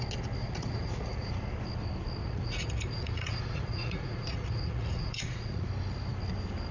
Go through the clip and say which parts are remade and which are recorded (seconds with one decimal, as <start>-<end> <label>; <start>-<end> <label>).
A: 0.0-0.4 recorded; 0.4-1.3 remade; 1.3-2.2 recorded; 2.2-5.7 remade; 5.7-6.7 recorded